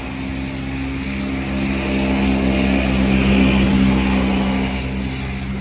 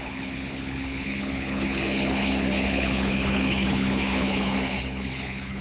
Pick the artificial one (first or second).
second